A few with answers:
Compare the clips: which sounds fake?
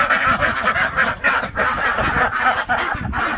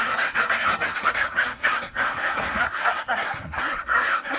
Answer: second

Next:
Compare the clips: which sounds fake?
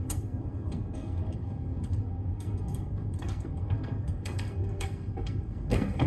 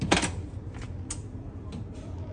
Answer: first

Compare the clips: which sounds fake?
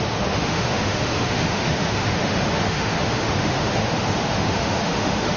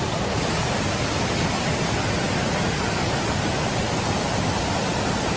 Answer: first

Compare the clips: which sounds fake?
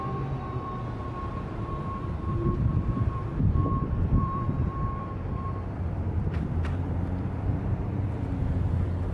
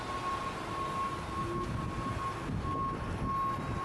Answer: first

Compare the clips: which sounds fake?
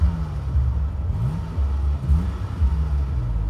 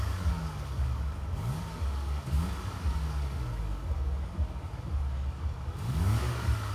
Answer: second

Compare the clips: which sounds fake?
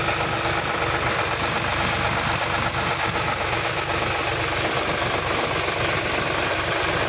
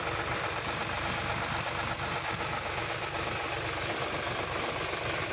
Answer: second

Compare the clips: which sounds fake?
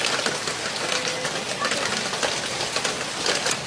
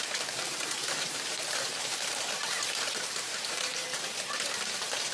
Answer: second